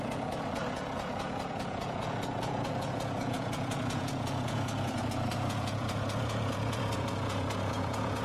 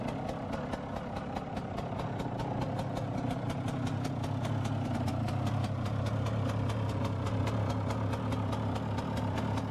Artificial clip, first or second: first